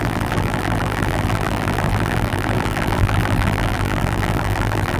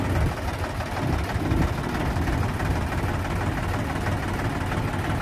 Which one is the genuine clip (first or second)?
second